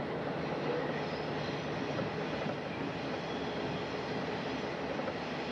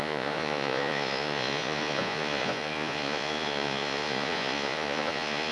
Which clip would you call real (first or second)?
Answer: first